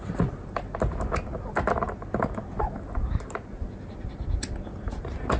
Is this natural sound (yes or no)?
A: yes